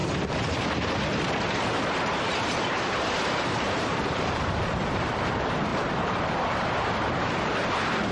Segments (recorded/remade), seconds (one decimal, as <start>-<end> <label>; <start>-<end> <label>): 0.0-2.2 recorded; 2.2-8.1 remade